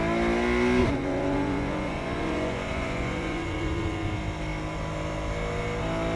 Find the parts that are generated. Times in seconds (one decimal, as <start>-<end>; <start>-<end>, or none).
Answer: 0.8-4.1